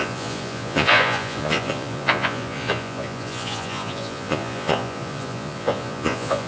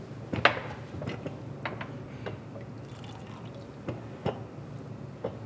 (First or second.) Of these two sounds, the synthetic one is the first